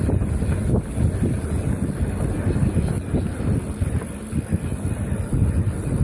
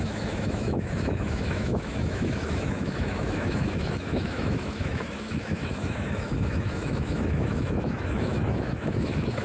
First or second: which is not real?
second